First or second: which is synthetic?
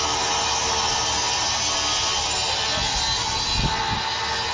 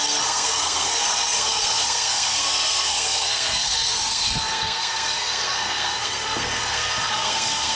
second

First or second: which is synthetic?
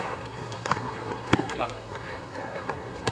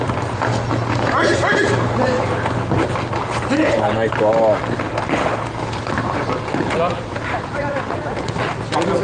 first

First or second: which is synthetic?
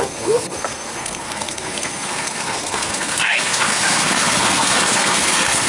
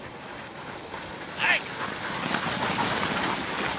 first